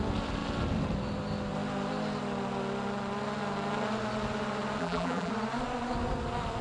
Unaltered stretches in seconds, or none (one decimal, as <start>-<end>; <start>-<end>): 0.0-4.8; 5.3-6.6